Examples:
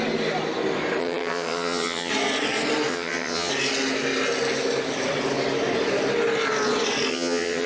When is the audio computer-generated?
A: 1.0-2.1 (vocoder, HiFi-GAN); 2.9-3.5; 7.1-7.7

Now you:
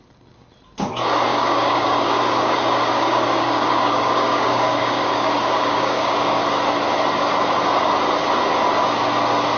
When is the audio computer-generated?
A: 1.3-6.4 (codec, DAC)

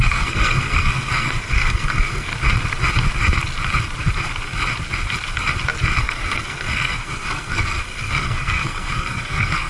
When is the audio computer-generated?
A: 0.0-2.3 (codec, SNAC); 6.0-9.7

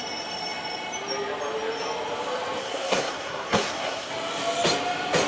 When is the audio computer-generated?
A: 2.6-4.1 (codec, SNAC)

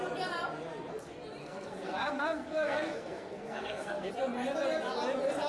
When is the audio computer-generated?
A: 1.4-4.1 (codec, SNAC)